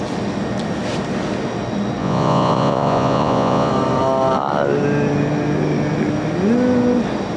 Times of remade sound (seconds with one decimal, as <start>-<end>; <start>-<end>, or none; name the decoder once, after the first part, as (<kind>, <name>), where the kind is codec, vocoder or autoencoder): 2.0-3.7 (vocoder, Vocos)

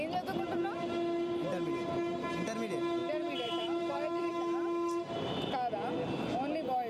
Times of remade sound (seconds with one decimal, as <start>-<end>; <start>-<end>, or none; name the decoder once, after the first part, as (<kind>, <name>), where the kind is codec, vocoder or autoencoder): 3.0-4.3 (vocoder, BigVGAN v2)

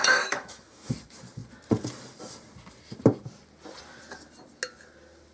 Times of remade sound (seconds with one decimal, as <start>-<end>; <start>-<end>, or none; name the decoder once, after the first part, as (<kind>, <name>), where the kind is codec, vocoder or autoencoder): 0.0-0.9 (autoencoder, DAC-VAE)